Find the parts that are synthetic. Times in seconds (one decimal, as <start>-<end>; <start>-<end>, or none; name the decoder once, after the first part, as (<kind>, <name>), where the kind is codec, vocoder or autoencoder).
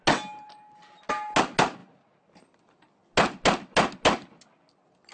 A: none